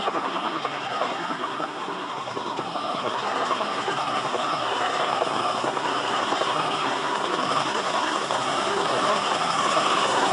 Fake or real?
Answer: fake